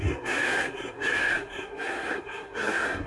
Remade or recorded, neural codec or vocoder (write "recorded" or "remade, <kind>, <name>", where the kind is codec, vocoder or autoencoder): remade, codec, SNAC